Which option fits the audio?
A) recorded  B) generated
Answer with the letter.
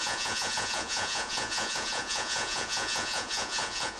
B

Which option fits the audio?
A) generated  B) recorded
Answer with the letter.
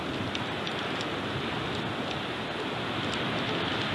B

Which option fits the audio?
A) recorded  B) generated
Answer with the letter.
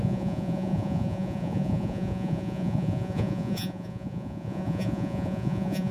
B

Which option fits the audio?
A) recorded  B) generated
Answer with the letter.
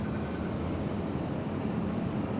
A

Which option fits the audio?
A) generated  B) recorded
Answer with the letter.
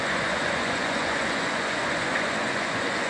A